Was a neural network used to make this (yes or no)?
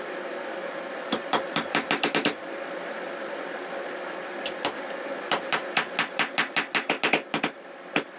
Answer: no